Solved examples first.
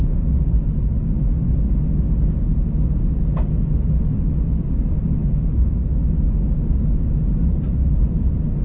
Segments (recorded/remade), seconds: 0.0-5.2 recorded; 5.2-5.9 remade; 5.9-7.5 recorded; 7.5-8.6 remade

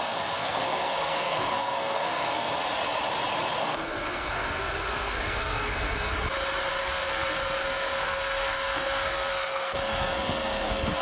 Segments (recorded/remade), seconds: 0.0-2.6 remade; 2.6-3.6 recorded; 3.6-6.1 remade; 6.1-6.7 recorded; 6.7-11.0 remade